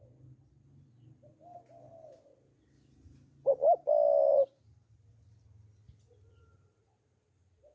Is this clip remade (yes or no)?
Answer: no